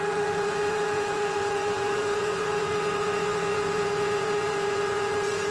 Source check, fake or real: fake